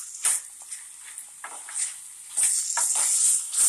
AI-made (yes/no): no